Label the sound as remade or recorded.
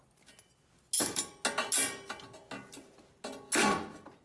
recorded